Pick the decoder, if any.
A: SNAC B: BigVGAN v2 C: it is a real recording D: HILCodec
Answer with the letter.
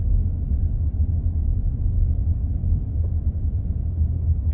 B